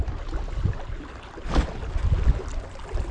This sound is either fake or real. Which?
real